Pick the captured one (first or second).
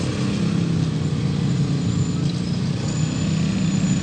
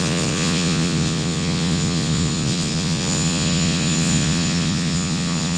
first